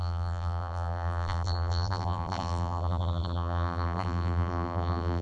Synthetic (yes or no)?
yes